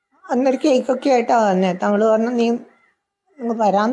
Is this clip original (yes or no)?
yes